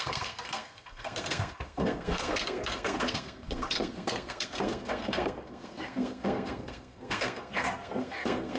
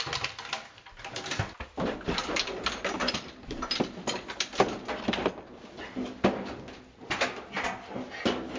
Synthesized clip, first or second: first